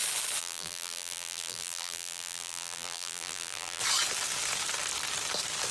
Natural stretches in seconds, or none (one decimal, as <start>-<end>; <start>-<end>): 0.0-0.4; 3.8-5.7